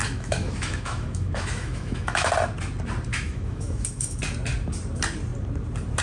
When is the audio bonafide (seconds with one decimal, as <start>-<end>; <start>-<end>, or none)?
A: 2.3-3.1; 4.2-6.0